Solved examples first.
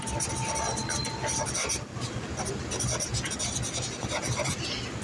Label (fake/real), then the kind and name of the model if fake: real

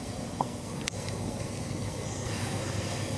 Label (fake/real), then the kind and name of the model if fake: fake, codec, SNAC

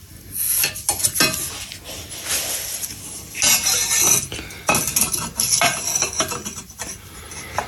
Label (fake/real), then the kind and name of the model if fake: real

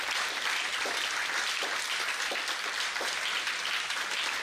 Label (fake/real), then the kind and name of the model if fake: fake, vocoder, BigVGAN v2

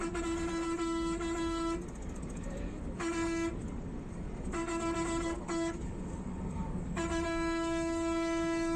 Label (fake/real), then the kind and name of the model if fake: fake, codec, DAC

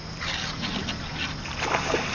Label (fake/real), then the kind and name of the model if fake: real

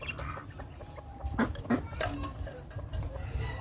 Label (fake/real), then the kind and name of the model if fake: real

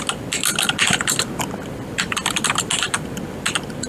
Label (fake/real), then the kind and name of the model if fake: real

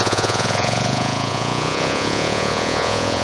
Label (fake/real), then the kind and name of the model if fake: fake, vocoder, Vocos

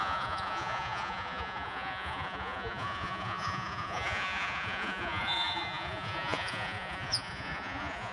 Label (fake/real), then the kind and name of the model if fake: fake, vocoder, Vocos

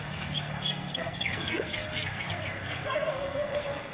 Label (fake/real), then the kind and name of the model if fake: fake, codec, SNAC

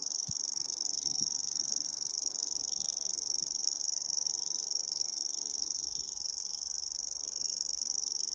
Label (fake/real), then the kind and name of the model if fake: fake, codec, SNAC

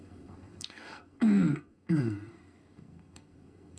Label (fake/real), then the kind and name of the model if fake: fake, codec, SNAC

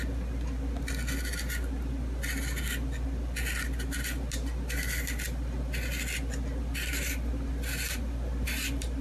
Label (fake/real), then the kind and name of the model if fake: real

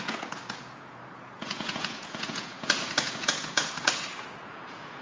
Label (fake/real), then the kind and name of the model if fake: fake, vocoder, Vocos